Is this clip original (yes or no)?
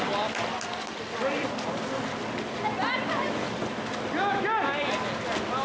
yes